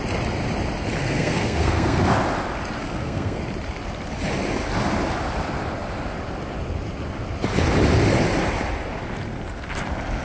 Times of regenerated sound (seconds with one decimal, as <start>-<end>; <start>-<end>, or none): 1.0-2.1; 2.8-3.4